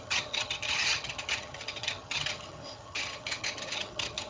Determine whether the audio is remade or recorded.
remade